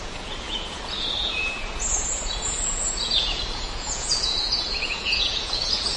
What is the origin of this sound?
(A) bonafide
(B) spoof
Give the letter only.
B